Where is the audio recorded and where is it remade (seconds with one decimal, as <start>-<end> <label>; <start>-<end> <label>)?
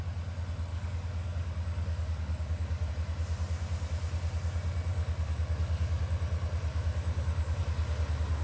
0.0-0.7 recorded; 0.7-2.9 remade; 2.9-4.9 recorded; 4.9-6.0 remade; 6.0-6.7 recorded; 6.7-7.6 remade; 7.6-8.4 recorded